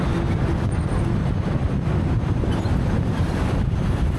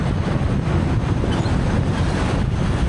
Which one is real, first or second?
second